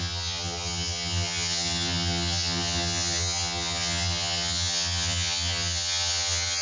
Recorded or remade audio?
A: remade